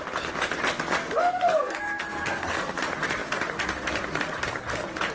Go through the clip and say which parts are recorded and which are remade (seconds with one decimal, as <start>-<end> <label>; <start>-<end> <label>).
0.0-1.0 recorded; 1.0-2.8 remade; 2.8-5.1 recorded